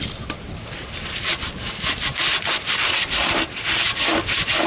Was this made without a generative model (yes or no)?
yes